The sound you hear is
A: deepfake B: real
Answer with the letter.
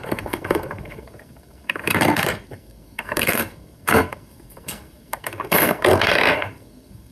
A